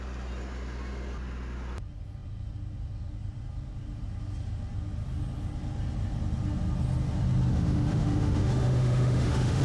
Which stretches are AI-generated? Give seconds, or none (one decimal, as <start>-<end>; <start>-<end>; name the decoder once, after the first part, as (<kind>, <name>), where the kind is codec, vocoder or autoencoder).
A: 7.5-9.6 (autoencoder, DAC-VAE)